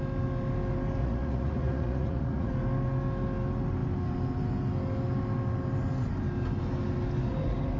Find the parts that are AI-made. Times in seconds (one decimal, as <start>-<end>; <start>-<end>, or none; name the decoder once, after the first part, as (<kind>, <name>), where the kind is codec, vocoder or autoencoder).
1.0-2.5 (vocoder, Vocos)